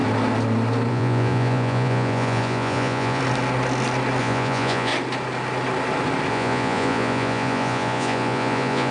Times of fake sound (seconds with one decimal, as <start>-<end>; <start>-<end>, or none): 0.9-3.2; 4.2-4.9; 6.3-8.9